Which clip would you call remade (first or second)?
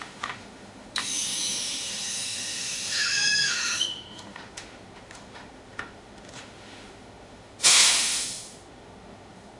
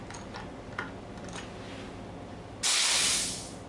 first